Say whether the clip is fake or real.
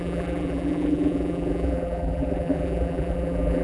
fake